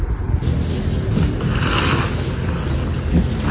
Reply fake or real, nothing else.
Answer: real